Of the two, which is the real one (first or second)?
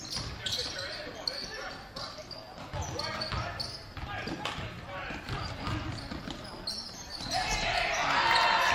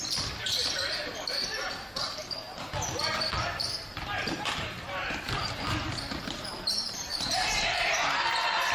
first